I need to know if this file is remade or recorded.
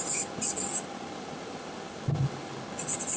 recorded